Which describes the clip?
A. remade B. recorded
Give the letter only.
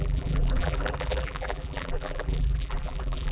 A